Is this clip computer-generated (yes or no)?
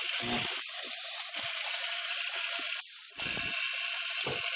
no